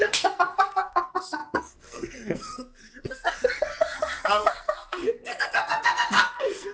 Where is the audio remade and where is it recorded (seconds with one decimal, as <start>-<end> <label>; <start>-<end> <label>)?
0.0-6.7 remade